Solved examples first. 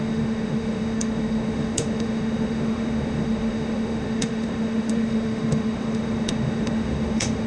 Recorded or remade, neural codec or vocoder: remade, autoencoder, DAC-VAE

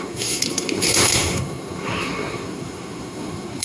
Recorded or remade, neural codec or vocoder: remade, codec, SNAC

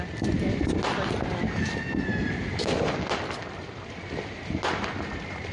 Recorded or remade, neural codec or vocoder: recorded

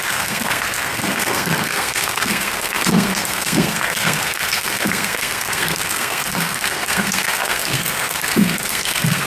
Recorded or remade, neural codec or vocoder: remade, codec, SNAC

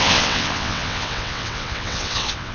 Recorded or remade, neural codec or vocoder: remade, vocoder, WaveNeXt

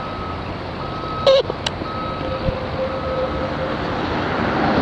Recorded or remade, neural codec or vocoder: recorded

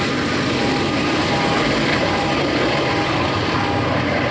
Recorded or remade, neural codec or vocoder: recorded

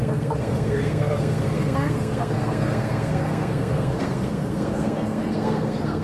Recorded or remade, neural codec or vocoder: remade, codec, SNAC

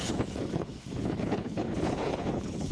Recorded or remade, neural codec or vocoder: remade, codec, HILCodec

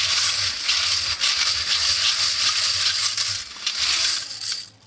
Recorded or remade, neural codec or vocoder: recorded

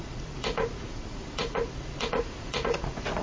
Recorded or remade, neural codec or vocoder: remade, vocoder, Vocos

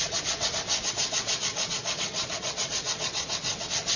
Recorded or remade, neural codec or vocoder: remade, vocoder, WaveNeXt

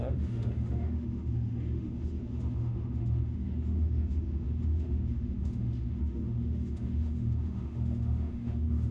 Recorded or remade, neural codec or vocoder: remade, autoencoder, DAC-VAE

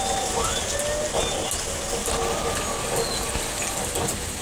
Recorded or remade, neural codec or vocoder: recorded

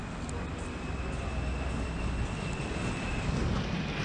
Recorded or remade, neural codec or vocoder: recorded